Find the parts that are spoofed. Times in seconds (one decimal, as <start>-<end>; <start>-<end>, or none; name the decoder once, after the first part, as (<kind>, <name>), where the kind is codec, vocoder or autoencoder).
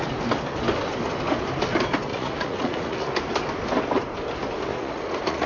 2.1-3.1 (vocoder, Vocos); 4.7-5.5